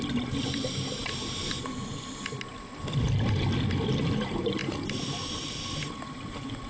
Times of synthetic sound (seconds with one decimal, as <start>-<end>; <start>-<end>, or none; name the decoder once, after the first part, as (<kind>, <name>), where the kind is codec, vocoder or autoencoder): none